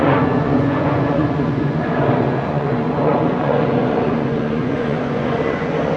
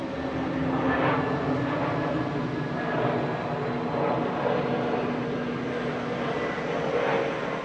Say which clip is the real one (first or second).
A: second